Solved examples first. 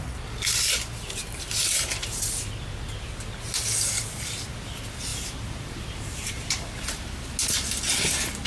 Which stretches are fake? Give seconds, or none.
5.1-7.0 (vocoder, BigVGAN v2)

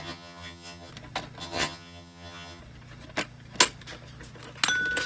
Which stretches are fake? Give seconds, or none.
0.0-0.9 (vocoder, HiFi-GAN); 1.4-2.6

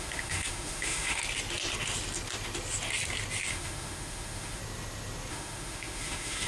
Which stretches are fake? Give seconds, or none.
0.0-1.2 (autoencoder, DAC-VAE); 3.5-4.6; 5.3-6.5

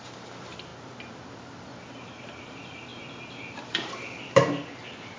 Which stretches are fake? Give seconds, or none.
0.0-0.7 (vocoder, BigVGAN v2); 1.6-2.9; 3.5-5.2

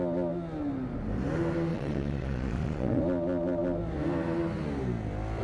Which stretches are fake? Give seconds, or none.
1.7-3.0 (vocoder, Vocos)